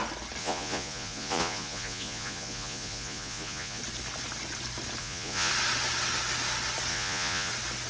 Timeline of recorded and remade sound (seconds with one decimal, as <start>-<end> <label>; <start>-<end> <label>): 0.0-0.4 recorded; 0.4-3.8 remade; 3.8-5.0 recorded; 5.0-5.5 remade; 5.5-6.9 recorded; 6.9-7.5 remade; 7.5-7.9 recorded